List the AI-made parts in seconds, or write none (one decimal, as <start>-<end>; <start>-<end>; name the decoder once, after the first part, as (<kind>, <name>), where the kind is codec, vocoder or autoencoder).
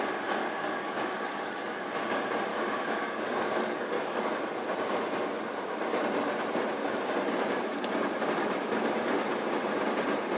0.4-1.8 (codec, DAC); 2.5-4.3